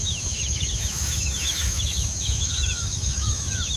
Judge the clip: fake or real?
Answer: fake